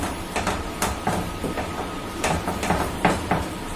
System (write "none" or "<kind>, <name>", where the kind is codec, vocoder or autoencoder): vocoder, BigVGAN v2